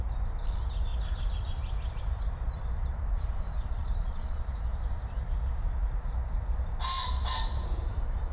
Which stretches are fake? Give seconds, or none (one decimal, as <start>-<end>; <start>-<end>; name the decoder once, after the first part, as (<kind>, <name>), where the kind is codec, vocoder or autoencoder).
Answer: 3.8-4.4 (vocoder, Vocos)